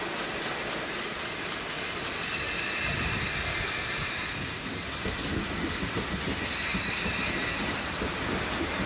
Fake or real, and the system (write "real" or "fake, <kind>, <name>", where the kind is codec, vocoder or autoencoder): real